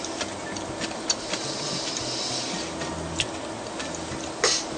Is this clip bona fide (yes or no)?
yes